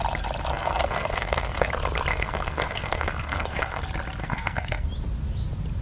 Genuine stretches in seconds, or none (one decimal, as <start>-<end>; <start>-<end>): 0.0-0.5; 1.7-2.1; 3.8-4.2; 4.9-5.8